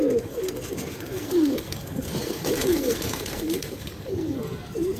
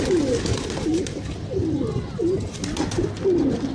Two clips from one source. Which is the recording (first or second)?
second